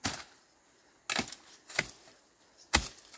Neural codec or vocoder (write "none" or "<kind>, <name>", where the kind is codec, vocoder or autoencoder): none